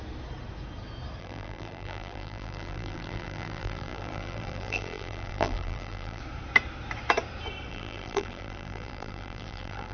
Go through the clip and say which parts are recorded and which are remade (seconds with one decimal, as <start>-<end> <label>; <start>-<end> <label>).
0.0-1.2 recorded; 1.2-6.2 remade; 6.2-7.7 recorded; 7.7-9.9 remade

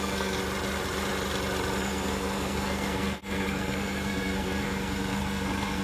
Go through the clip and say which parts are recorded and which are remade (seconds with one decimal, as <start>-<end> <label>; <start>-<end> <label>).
0.0-0.4 remade; 0.4-1.8 recorded; 1.8-5.8 remade

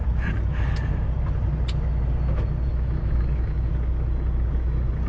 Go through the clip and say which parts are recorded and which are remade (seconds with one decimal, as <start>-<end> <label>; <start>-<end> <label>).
0.0-2.7 recorded; 2.7-3.7 remade; 3.7-5.1 recorded